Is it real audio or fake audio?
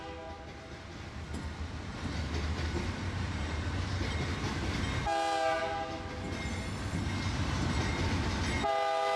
real